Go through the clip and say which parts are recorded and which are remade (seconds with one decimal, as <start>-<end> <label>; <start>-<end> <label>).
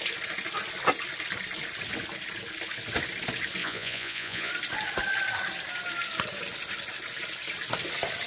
0.0-3.6 recorded; 3.6-4.5 remade; 4.5-8.3 recorded